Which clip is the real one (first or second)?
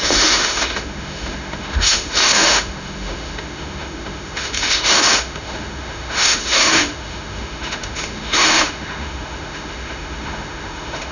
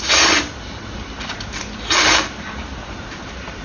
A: second